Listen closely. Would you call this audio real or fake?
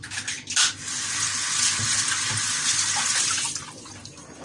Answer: real